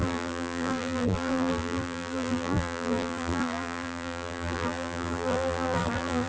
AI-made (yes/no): yes